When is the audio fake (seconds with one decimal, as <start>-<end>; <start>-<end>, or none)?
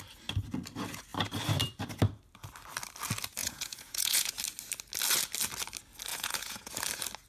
3.4-4.3; 6.1-6.7